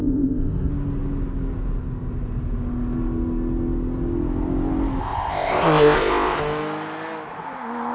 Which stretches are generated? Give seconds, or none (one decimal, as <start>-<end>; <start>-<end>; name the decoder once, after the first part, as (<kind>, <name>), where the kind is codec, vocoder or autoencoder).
0.0-0.7 (codec, ZipCodec); 5.0-6.4